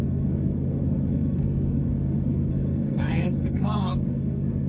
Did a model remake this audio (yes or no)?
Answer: yes